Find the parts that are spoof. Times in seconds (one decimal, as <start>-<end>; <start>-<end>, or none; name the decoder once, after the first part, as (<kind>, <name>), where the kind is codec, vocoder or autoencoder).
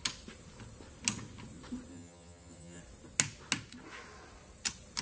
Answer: 1.9-2.8 (vocoder, HiFi-GAN)